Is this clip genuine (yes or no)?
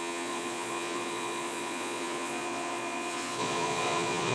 no